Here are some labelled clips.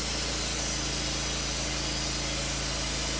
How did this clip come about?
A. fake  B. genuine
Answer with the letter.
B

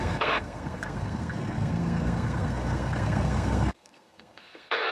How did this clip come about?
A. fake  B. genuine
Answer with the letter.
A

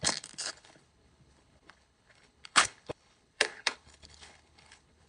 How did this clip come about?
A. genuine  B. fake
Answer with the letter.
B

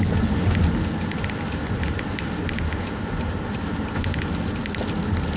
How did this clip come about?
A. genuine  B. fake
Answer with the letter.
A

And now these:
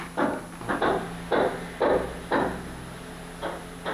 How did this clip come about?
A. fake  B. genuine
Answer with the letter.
B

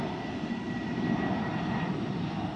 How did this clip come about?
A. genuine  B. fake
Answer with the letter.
A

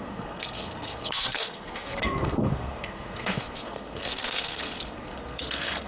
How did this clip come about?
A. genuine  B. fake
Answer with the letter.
B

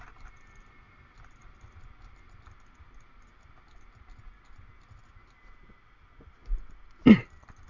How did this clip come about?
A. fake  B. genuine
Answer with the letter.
B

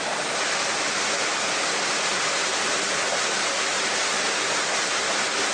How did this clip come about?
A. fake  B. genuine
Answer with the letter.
B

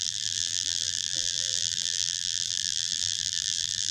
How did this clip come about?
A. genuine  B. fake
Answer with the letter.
B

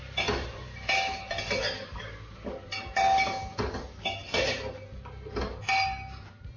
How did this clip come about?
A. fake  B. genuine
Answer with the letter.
B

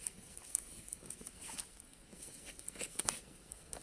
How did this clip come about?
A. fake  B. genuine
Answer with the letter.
A